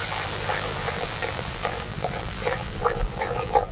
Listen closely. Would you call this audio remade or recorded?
remade